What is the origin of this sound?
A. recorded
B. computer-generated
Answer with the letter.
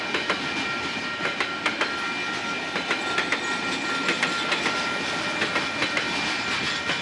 A